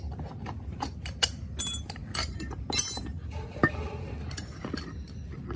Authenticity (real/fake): real